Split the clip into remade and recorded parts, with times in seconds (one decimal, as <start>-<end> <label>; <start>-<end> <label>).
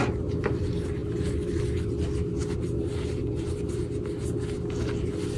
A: 0.0-5.4 recorded